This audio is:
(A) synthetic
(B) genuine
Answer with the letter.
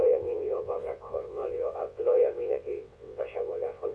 A